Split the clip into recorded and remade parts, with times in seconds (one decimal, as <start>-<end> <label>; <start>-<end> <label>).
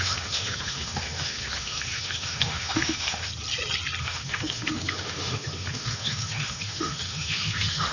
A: 0.0-3.3 remade; 3.3-4.0 recorded; 4.0-7.9 remade